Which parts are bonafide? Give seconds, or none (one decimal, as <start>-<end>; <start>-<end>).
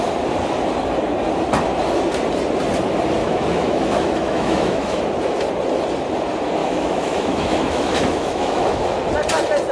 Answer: 0.0-3.2; 5.0-6.6; 9.0-9.7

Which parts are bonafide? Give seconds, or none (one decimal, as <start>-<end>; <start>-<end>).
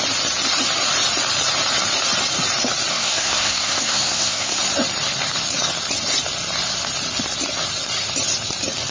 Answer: 0.0-2.9; 4.6-8.9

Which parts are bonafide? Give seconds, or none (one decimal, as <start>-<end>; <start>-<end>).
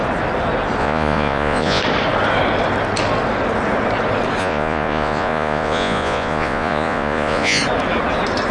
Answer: 0.0-0.8; 1.8-4.4; 7.6-8.5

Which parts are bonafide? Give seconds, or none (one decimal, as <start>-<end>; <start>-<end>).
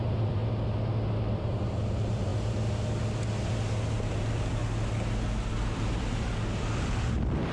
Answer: 0.4-1.4; 2.3-4.1; 4.6-5.5